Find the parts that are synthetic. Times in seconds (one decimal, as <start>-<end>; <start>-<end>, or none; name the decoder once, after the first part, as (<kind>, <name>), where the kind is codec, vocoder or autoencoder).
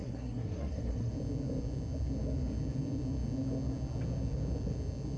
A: 0.0-1.1 (codec, SNAC)